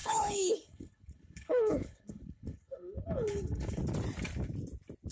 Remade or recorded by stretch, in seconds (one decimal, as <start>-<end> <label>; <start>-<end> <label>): 0.0-3.8 remade; 3.8-5.1 recorded

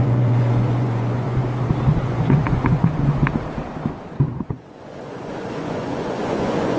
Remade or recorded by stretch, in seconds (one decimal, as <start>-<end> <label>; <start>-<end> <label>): 0.0-1.4 remade; 1.4-2.0 recorded; 2.0-3.3 remade; 3.3-4.4 recorded; 4.4-6.8 remade

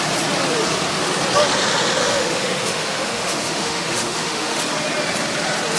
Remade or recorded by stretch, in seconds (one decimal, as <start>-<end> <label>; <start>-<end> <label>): 0.0-2.0 recorded; 2.0-4.6 remade; 4.6-5.8 recorded

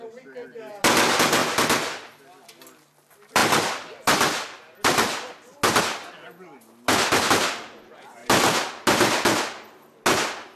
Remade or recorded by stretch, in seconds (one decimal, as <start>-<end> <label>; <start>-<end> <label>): 0.0-10.6 recorded

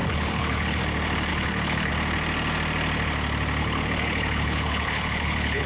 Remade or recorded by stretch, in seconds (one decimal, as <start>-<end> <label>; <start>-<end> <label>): 0.0-0.8 remade; 0.8-1.3 recorded; 1.3-1.9 remade; 1.9-3.6 recorded; 3.6-5.7 remade

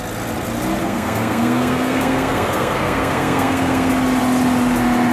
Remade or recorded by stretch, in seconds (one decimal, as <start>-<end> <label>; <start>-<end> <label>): 0.0-0.8 recorded; 0.8-3.9 remade; 3.9-5.1 recorded